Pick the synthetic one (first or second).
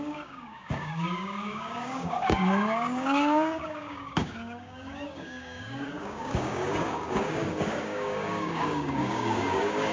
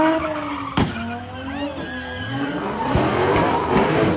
first